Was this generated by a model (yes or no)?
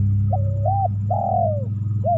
no